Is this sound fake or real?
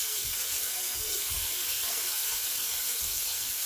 fake